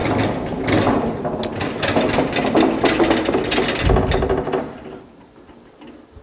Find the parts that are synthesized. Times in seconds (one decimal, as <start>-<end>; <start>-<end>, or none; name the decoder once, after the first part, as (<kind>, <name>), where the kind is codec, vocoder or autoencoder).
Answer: none